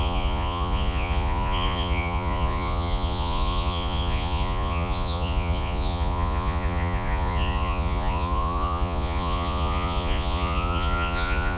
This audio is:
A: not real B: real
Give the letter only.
A